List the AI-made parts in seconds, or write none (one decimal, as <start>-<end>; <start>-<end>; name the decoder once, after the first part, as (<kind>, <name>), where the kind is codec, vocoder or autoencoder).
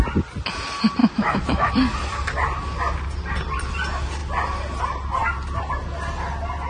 1.0-1.7 (autoencoder, DAC-VAE)